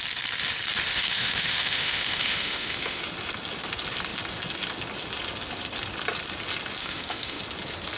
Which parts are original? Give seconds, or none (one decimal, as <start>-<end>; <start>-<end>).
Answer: 0.0-0.9; 3.0-6.8; 7.4-8.0